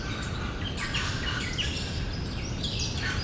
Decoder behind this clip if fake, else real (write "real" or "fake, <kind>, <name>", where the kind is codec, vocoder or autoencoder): real